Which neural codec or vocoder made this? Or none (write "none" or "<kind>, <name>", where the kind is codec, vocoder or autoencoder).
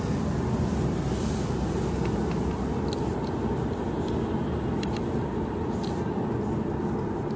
none